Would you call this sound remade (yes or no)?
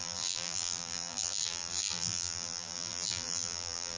yes